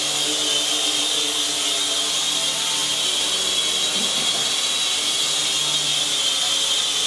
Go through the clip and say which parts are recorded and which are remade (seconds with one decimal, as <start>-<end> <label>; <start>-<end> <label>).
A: 0.0-7.1 recorded